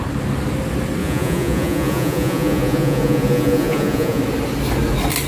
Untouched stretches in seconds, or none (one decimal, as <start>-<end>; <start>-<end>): 0.0-1.0; 4.2-5.3